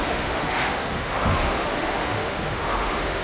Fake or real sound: fake